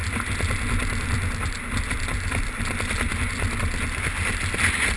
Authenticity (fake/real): real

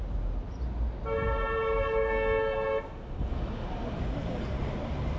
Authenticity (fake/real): real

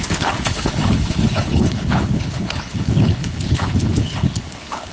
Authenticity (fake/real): fake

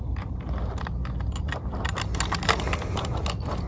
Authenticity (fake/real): real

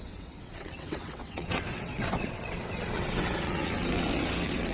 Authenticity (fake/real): fake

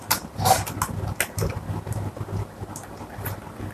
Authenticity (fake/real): real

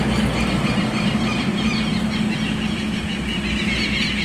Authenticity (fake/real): real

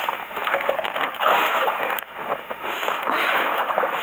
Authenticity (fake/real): fake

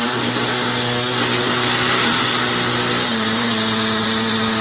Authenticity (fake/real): real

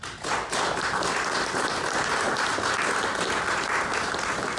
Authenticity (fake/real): real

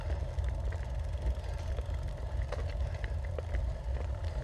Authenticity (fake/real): real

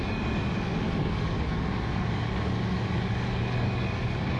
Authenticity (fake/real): fake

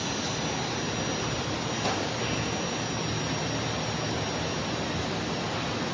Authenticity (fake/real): real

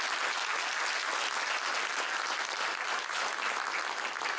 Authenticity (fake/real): real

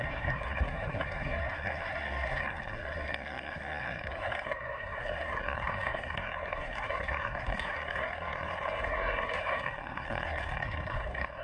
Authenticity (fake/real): fake